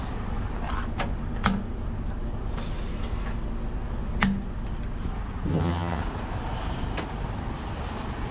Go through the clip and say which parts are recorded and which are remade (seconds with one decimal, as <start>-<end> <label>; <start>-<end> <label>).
0.0-5.5 recorded; 5.5-6.0 remade; 6.0-8.3 recorded